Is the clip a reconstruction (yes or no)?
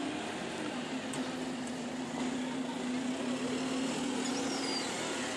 no